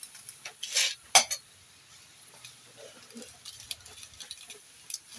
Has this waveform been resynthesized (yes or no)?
no